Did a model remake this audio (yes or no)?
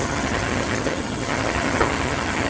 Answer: yes